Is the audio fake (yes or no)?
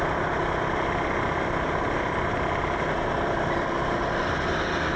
no